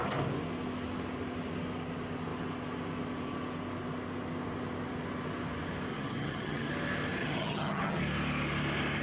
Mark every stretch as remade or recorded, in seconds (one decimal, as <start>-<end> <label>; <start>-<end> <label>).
0.0-5.9 recorded; 5.9-6.7 remade; 6.7-7.2 recorded; 7.2-8.0 remade; 8.0-9.0 recorded